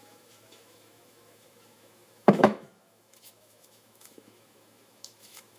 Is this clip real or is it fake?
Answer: fake